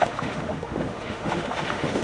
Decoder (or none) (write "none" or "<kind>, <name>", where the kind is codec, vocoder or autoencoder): autoencoder, DAC-VAE